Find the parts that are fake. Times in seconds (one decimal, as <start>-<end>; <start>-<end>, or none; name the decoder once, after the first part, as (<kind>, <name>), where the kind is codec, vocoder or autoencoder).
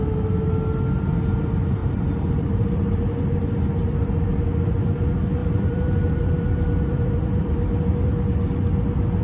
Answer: 1.8-3.0 (vocoder, BigVGAN v2); 5.4-8.1